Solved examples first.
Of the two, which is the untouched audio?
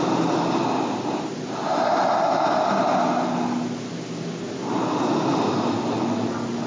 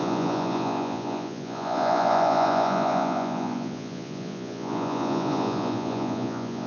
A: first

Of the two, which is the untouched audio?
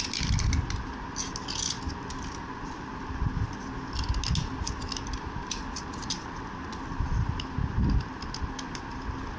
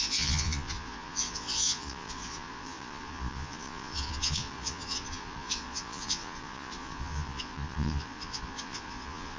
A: first